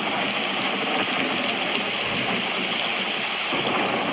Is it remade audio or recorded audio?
recorded